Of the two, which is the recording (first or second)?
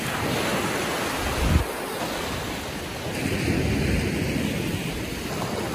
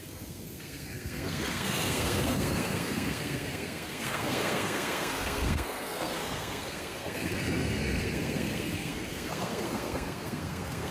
first